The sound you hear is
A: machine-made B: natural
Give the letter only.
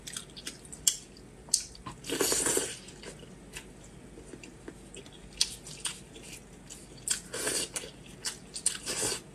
B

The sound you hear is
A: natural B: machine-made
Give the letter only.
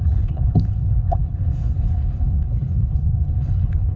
B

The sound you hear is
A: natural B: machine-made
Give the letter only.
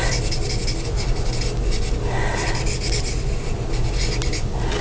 A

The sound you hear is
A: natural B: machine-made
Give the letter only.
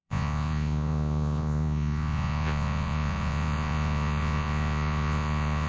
B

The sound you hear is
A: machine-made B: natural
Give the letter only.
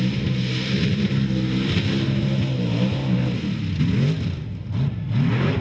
B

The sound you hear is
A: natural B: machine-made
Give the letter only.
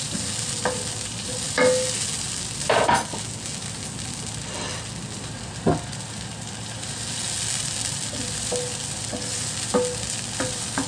A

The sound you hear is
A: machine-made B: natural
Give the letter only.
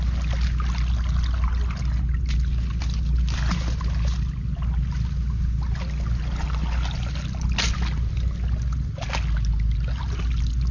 B